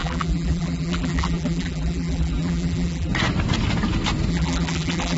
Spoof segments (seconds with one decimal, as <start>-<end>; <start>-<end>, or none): 0.0-3.1; 4.3-5.2